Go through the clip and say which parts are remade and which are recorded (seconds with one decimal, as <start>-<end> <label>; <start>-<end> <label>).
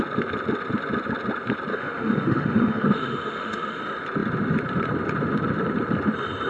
0.0-1.7 recorded; 1.7-3.8 remade; 3.8-6.5 recorded